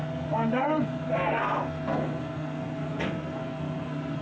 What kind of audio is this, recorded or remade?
remade